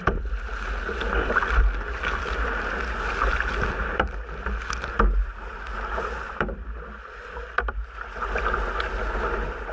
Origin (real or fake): real